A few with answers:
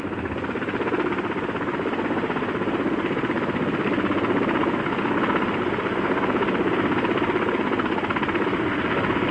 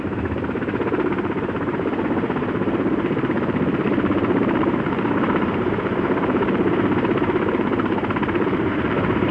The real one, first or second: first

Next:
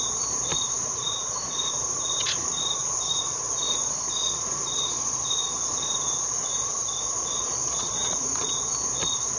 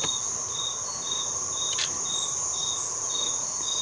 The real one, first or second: second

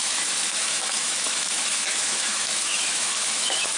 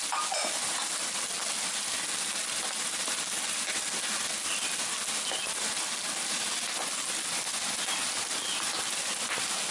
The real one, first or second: second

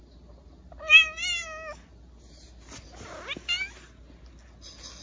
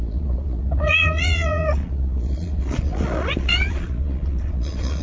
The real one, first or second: first